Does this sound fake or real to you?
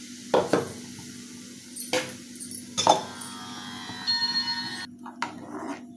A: real